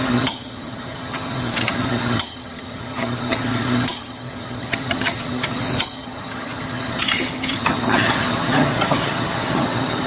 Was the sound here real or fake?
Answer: fake